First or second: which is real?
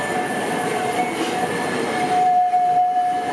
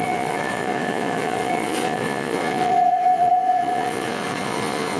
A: first